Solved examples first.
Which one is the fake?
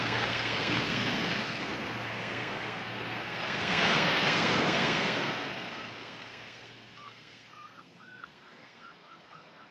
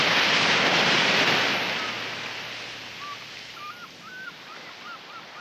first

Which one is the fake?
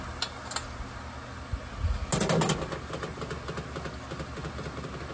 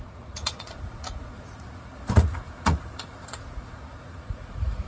second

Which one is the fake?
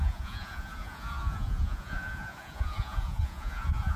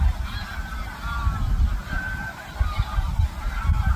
first